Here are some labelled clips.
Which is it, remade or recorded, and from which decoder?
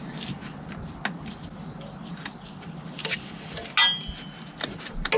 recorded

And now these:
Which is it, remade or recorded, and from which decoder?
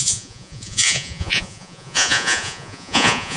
remade, vocoder, Vocos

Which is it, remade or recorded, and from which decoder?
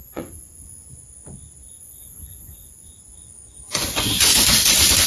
remade, vocoder, Vocos